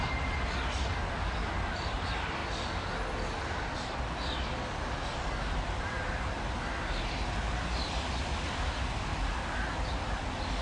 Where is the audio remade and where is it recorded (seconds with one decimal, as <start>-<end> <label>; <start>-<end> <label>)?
0.0-10.6 recorded